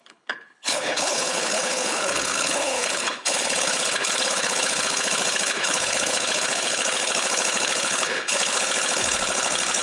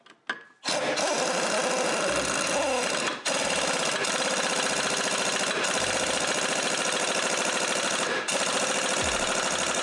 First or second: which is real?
second